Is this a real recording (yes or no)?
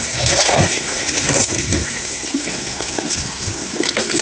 no